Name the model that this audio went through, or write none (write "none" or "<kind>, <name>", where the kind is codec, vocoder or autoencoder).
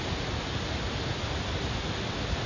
none